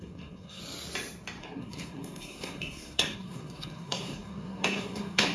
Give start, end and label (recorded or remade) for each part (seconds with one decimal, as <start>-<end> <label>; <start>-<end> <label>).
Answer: 0.0-0.6 remade; 0.6-1.4 recorded; 1.4-5.3 remade